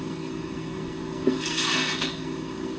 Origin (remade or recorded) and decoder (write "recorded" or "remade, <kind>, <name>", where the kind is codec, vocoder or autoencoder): remade, codec, SNAC